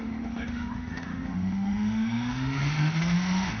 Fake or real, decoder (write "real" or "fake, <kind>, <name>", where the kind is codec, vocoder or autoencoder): fake, autoencoder, DAC-VAE